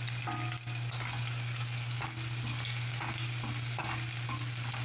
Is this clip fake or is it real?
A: real